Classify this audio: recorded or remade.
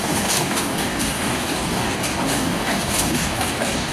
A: remade